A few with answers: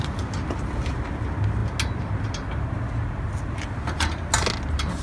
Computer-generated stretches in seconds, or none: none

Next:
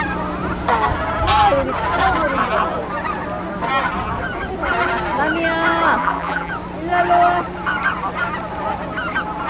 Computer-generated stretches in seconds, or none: 6.0-6.5 (vocoder, BigVGAN v2)

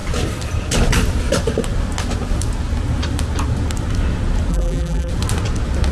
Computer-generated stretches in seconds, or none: 4.5-5.1 (vocoder, BigVGAN v2)